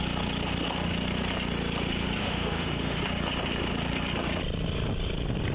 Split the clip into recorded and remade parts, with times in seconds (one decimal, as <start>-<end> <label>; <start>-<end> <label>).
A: 0.0-2.2 recorded; 2.2-3.0 remade; 3.0-5.5 recorded